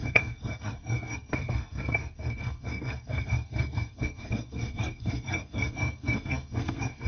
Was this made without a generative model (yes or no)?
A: no